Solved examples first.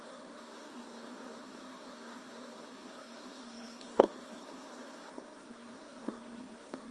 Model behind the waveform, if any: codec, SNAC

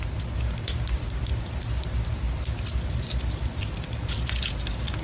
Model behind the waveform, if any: none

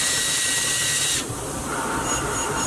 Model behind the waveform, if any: none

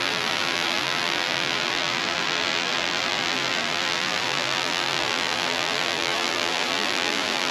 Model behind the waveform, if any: vocoder, BigVGAN v2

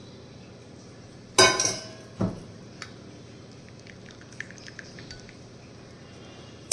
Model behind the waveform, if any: none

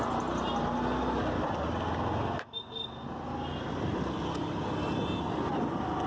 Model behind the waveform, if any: none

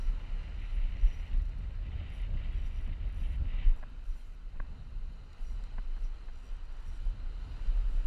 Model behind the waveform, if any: none